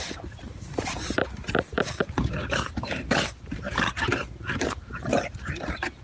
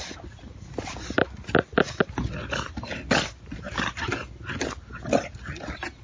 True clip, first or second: second